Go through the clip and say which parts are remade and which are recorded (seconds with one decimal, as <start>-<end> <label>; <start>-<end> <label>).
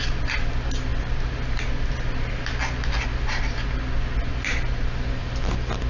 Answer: 0.0-5.9 recorded